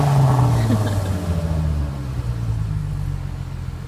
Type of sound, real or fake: real